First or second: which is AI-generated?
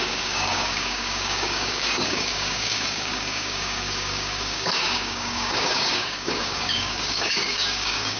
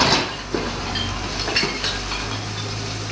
first